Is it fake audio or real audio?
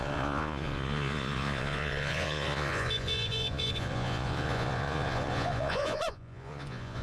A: fake